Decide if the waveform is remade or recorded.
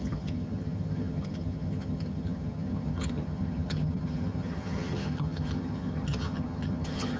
remade